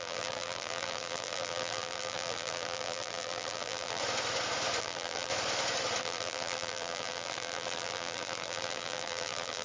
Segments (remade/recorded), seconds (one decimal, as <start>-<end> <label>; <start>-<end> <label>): 0.0-4.0 remade; 4.0-4.8 recorded; 4.8-5.3 remade; 5.3-6.0 recorded; 6.0-9.6 remade